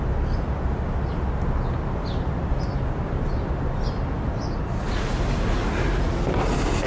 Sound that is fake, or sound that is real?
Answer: real